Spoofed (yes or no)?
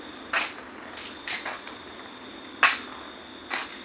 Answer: no